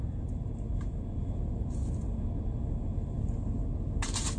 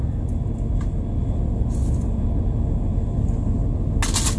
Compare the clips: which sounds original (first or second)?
second